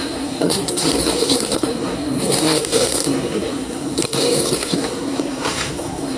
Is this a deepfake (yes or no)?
yes